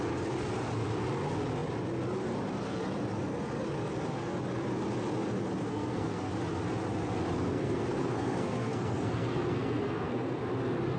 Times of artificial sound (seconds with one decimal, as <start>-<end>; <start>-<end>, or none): 5.7-6.3; 7.5-10.4